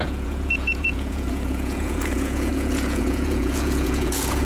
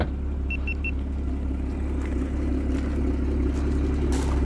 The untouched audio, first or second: second